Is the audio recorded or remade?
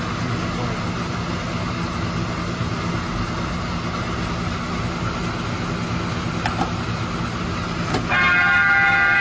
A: recorded